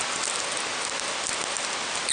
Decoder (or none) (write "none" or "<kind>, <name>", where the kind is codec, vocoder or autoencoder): none